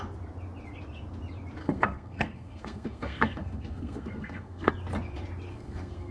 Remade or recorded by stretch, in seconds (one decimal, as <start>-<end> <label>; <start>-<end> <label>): 0.0-1.6 recorded; 1.6-4.7 remade; 4.7-5.5 recorded; 5.5-6.1 remade